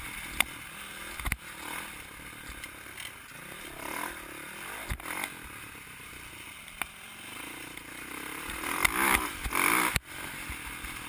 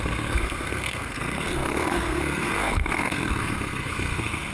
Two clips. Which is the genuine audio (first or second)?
first